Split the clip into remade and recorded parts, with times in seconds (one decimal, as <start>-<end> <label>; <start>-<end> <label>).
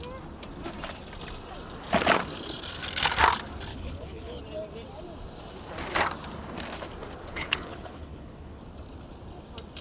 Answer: 0.0-3.7 recorded; 3.7-4.4 remade; 4.4-7.3 recorded; 7.3-8.6 remade; 8.6-9.8 recorded